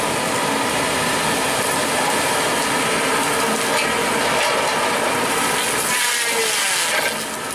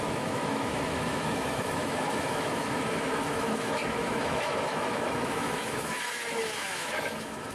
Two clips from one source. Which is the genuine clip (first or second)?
first